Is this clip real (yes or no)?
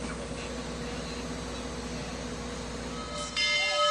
yes